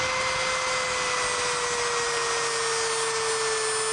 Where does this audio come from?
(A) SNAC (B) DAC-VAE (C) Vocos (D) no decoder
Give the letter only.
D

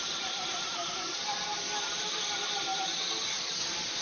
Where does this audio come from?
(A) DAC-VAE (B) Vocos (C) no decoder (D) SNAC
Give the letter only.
C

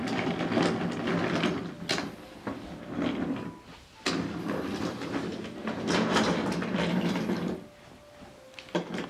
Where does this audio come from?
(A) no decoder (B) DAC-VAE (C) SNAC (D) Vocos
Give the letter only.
A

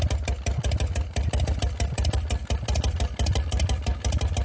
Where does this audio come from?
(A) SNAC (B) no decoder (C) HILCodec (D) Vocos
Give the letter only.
B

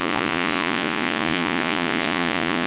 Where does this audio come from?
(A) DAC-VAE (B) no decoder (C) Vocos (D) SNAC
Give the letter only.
C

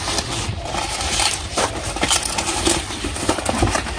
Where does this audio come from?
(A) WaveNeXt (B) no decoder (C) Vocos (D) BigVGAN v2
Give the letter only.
B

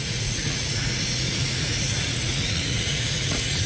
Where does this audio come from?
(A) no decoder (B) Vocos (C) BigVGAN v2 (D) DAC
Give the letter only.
B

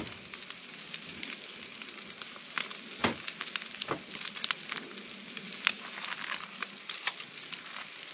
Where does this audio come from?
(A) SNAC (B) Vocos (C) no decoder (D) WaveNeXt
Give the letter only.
C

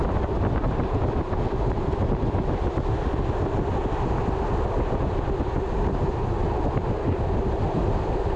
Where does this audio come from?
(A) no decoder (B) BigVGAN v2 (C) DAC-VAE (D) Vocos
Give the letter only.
A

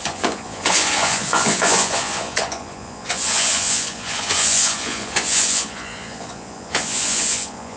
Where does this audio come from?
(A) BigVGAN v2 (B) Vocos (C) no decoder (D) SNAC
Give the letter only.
B